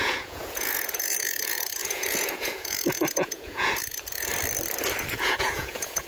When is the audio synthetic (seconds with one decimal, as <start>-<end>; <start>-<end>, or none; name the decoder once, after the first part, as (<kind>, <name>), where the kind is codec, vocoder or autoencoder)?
0.0-4.3 (vocoder, Vocos); 5.1-6.1